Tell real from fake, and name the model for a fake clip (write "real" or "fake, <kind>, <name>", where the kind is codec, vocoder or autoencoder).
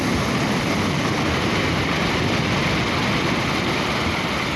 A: real